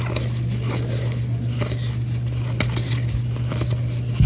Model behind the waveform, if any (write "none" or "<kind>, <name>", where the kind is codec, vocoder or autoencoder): none